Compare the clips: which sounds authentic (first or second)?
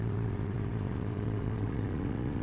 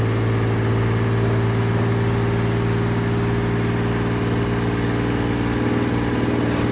second